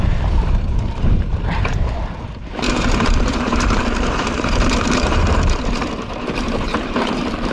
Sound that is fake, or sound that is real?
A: fake